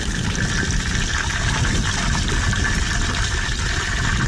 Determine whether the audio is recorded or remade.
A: recorded